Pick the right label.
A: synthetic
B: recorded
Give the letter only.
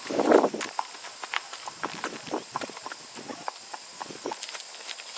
B